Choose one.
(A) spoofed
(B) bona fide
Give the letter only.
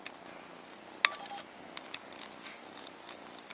B